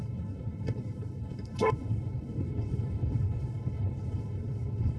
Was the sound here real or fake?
fake